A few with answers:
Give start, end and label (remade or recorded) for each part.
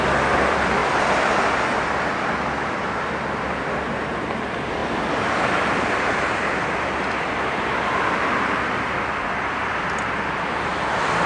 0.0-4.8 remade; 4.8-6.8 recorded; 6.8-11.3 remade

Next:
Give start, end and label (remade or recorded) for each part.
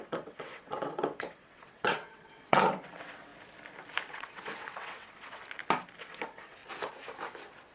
0.0-3.3 remade; 3.3-4.1 recorded; 4.1-5.4 remade; 5.4-6.0 recorded; 6.0-6.6 remade; 6.6-7.7 recorded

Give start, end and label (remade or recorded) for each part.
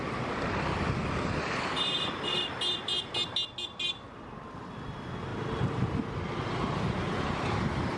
0.0-8.0 recorded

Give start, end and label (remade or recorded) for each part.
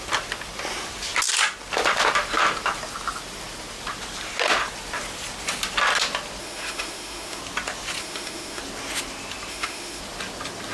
0.0-6.4 recorded; 6.4-7.4 remade; 7.4-8.0 recorded; 8.0-8.6 remade; 8.6-9.5 recorded; 9.5-10.0 remade; 10.0-10.7 recorded